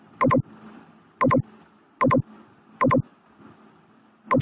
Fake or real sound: real